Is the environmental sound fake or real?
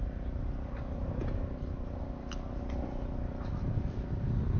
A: real